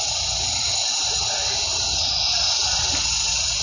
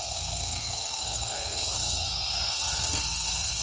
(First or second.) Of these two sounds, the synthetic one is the second